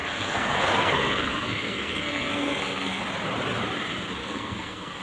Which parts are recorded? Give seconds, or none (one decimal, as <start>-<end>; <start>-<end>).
3.0-4.2